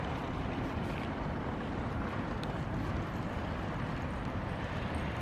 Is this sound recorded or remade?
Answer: remade